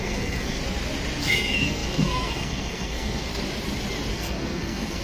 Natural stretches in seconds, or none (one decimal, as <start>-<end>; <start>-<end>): 0.6-1.2; 3.3-4.1